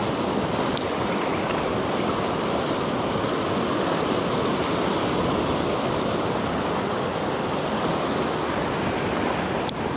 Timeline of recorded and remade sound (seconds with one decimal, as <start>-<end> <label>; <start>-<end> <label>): 0.0-10.0 recorded